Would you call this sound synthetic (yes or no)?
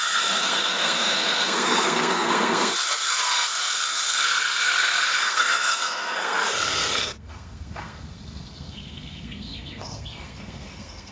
yes